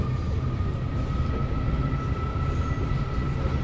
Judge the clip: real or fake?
real